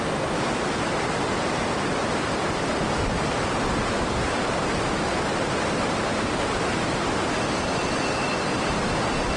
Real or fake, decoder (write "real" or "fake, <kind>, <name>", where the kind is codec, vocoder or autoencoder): fake, vocoder, BigVGAN v2